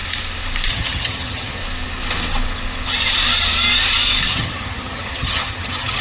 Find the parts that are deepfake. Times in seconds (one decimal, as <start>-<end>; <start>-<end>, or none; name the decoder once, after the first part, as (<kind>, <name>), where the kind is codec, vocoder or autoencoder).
0.7-1.6 (vocoder, HiFi-GAN); 4.3-6.0